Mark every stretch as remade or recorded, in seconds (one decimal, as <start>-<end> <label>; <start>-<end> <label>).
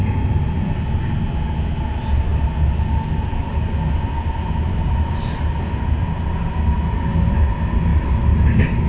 0.0-8.9 recorded